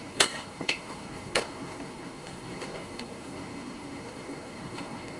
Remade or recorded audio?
remade